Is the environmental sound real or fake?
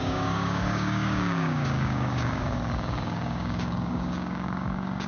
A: fake